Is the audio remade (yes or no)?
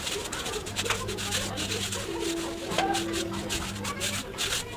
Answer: no